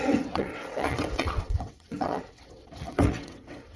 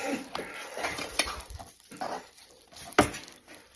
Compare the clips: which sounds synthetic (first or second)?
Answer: first